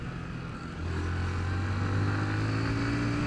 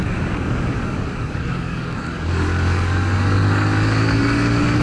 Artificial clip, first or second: second